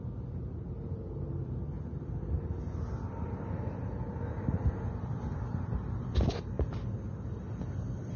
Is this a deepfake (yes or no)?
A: no